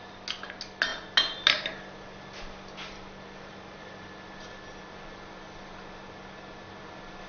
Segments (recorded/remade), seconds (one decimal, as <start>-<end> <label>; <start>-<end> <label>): 0.0-7.3 recorded